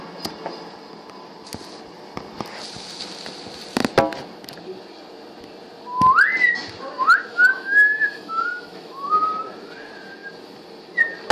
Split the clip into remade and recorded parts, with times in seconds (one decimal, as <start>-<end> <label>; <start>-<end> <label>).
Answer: 0.0-7.3 recorded; 7.3-9.1 remade; 9.1-11.3 recorded